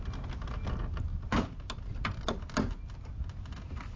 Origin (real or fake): real